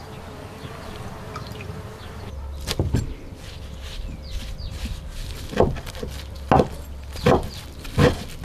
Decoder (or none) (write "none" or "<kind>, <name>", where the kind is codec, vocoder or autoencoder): none